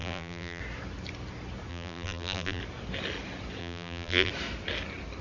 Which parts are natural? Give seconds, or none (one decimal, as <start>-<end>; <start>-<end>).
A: 0.6-1.7; 2.6-3.6; 4.3-5.2